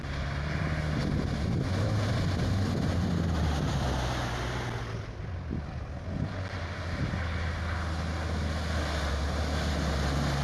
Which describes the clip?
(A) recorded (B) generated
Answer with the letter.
A